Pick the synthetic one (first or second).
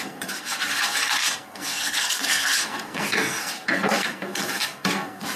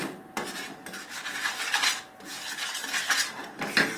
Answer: first